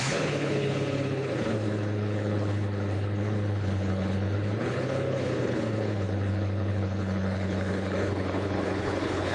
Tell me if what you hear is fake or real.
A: fake